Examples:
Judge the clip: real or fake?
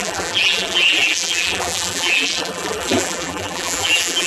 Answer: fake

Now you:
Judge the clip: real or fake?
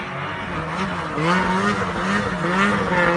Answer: real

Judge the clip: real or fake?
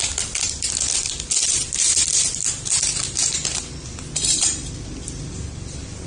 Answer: fake